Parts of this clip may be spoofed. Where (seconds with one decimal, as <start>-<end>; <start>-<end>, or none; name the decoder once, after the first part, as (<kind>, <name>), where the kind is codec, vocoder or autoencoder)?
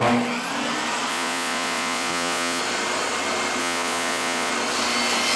1.1-2.6 (vocoder, Vocos); 3.6-4.5